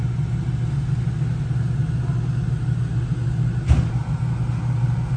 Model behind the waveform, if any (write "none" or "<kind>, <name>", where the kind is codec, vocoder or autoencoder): none